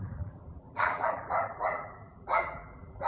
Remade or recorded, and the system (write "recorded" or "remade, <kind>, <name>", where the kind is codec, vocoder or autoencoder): remade, vocoder, BigVGAN v2